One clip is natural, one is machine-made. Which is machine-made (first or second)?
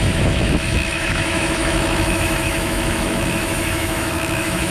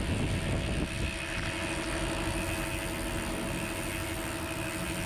first